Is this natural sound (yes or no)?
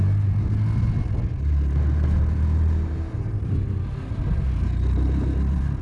yes